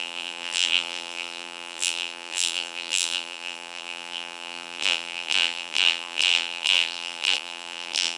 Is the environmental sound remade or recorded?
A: remade